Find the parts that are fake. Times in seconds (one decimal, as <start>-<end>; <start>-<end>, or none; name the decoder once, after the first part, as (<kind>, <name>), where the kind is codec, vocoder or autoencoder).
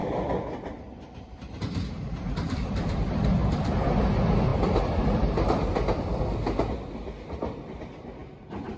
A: 0.0-3.9 (vocoder, BigVGAN v2); 4.5-6.2